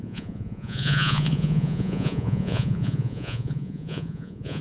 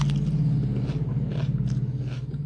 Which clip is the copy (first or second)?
first